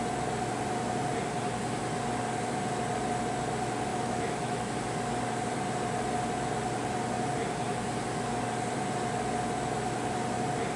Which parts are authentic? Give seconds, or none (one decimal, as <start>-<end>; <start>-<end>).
0.0-3.9; 4.7-10.8